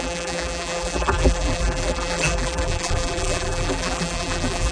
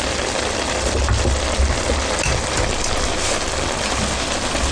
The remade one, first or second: first